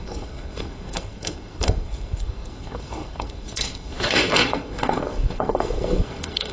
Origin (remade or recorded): remade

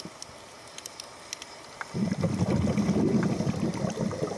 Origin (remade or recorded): recorded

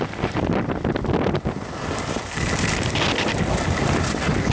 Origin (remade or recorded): recorded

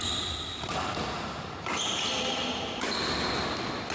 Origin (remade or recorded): recorded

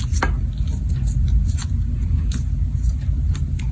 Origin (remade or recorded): recorded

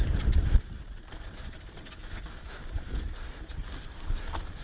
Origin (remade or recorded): recorded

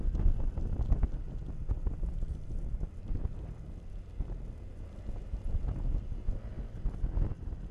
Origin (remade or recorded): recorded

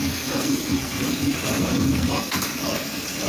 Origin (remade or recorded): remade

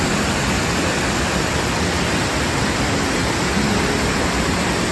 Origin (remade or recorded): recorded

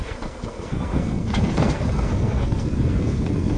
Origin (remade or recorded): remade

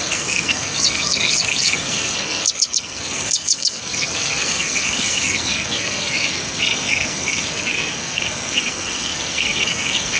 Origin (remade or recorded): remade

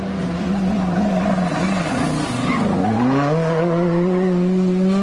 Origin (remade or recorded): recorded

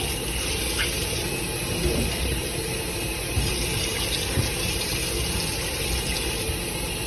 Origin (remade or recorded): recorded